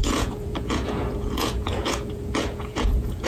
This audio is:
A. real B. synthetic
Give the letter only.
B